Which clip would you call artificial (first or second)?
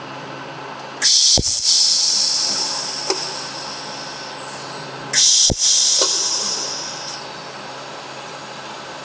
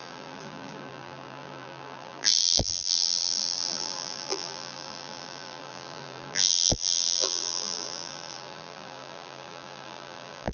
second